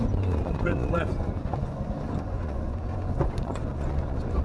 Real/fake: fake